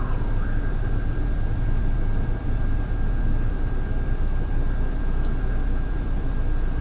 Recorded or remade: remade